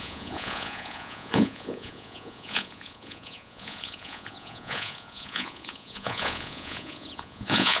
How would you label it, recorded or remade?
remade